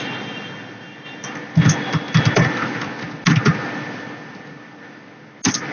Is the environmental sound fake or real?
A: real